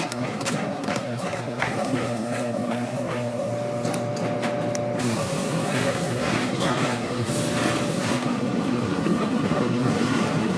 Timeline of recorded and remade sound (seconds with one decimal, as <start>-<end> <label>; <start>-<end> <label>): 0.0-3.5 remade; 3.5-5.0 recorded; 5.0-7.3 remade; 7.3-7.9 recorded; 7.9-10.6 remade